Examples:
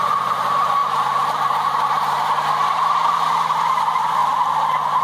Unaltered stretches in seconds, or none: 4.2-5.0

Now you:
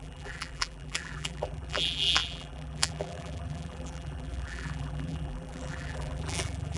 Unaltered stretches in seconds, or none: none